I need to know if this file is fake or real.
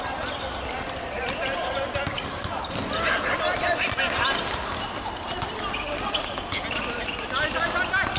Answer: real